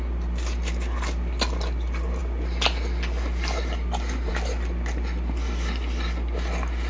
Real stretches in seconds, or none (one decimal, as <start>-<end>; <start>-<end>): 0.0-6.9